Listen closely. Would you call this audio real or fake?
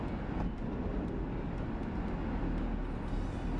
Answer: real